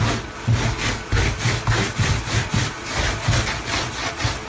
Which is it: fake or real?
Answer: real